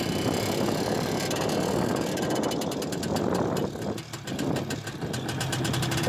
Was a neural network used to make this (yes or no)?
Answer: no